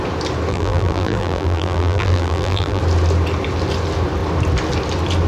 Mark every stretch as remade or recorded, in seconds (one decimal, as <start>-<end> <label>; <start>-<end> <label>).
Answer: 0.0-0.5 recorded; 0.5-2.8 remade; 2.8-5.3 recorded